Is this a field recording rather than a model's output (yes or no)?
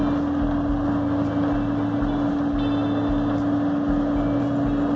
yes